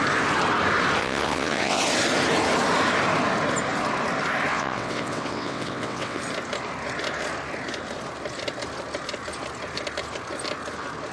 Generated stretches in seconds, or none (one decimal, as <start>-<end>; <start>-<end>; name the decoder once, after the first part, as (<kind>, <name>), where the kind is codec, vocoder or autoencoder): 1.0-1.8 (vocoder, WaveNeXt); 4.5-6.2